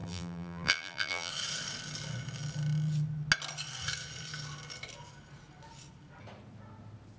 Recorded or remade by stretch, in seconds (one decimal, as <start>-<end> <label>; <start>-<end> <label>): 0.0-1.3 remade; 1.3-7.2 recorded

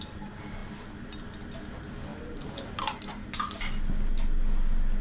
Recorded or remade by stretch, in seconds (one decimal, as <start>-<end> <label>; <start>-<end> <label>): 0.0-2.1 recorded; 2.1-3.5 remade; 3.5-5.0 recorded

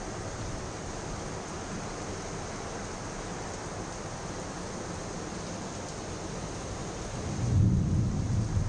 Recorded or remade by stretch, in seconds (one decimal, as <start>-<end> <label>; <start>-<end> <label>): 0.0-8.7 recorded

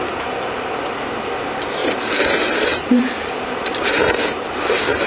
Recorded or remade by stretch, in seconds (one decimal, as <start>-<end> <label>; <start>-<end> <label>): 0.0-1.8 recorded; 1.8-5.1 remade

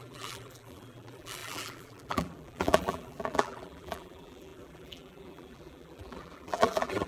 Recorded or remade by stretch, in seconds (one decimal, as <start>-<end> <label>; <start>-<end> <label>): 0.0-7.1 remade

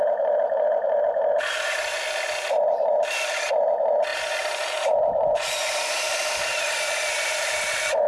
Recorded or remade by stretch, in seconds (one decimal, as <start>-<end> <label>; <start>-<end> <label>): 0.0-8.1 remade

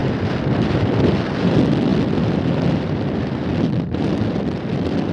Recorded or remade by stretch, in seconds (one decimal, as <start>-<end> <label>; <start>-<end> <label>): 0.0-1.1 remade; 1.1-5.1 recorded

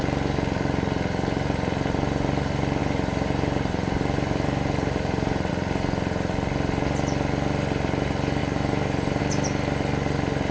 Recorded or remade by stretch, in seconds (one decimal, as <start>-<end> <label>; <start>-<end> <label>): 0.0-2.8 recorded; 2.8-5.5 remade; 5.5-8.4 recorded; 8.4-9.2 remade; 9.2-10.5 recorded